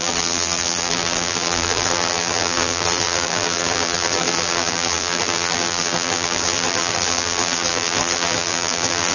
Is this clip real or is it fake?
fake